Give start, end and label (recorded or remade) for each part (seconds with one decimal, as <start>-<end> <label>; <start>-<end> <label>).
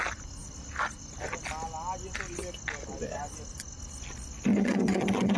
0.0-4.5 recorded; 4.5-5.4 remade